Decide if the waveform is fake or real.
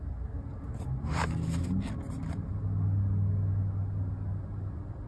real